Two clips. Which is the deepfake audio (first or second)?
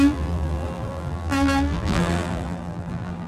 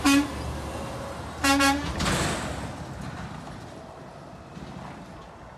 first